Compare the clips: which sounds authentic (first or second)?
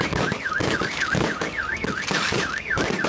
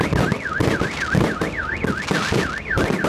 second